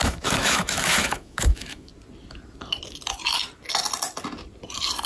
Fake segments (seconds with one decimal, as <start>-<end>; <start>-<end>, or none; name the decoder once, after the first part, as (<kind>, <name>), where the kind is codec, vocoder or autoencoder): 0.0-1.9 (autoencoder, DAC-VAE)